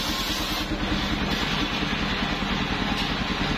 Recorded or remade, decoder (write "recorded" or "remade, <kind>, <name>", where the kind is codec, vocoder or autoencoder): recorded